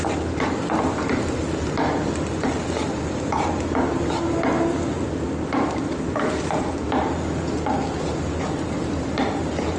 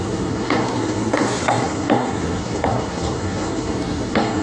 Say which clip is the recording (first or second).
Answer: first